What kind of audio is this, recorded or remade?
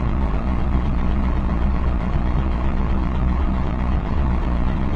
remade